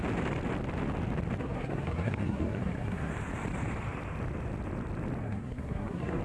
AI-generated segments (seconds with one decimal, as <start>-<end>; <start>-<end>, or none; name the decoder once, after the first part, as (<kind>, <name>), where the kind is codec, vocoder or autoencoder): 1.4-3.1 (codec, SNAC); 5.2-6.2

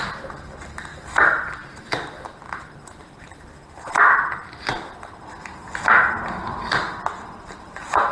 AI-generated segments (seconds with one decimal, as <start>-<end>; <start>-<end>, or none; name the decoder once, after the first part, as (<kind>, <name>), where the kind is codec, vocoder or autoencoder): 0.0-3.5 (vocoder, BigVGAN v2); 7.2-8.1